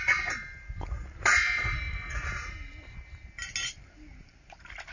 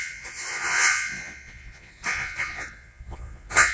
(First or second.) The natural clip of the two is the first